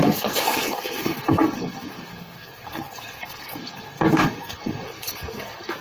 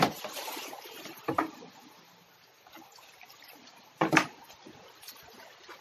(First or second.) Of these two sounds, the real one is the second